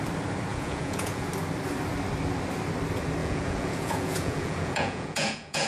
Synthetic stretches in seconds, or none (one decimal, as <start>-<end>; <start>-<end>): 0.5-1.3; 3.2-5.7